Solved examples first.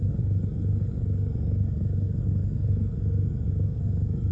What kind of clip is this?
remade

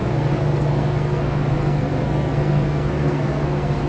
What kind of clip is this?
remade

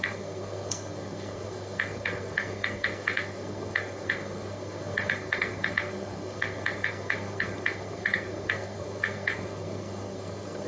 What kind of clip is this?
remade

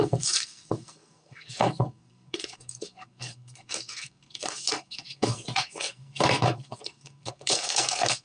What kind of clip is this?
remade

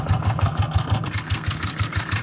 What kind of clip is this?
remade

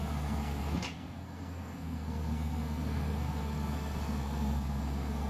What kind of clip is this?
remade